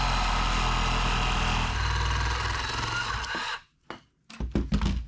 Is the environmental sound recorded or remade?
recorded